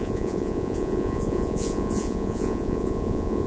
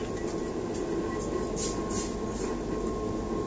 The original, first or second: second